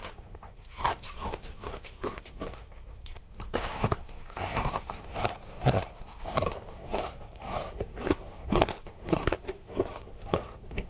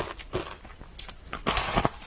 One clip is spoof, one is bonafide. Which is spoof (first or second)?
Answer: first